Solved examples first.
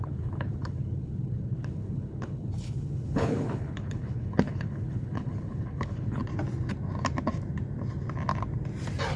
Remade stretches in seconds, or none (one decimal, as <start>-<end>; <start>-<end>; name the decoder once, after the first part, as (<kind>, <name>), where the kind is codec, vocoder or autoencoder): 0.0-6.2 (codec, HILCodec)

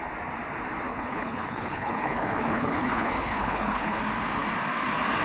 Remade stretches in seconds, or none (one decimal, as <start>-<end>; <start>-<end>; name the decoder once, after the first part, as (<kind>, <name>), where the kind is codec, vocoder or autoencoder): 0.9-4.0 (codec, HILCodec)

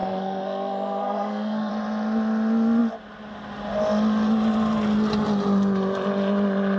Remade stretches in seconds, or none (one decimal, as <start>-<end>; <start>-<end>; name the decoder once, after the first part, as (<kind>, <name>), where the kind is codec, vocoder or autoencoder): 0.0-1.7 (codec, SNAC)

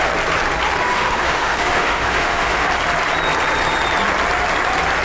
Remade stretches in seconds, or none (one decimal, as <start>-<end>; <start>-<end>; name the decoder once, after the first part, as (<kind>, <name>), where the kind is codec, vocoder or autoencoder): 0.8-2.7 (autoencoder, DAC-VAE)